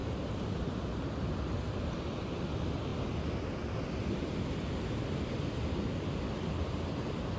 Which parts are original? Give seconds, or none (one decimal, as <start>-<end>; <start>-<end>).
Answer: 0.0-7.4

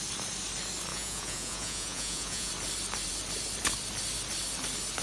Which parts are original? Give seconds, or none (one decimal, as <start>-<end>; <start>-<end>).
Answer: 0.0-0.9; 2.5-5.0

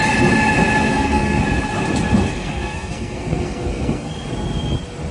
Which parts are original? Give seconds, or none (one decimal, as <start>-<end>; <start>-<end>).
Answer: 0.0-0.9; 1.4-2.3; 4.3-5.1